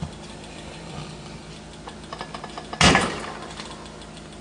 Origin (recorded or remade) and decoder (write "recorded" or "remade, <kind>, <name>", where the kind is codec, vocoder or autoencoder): recorded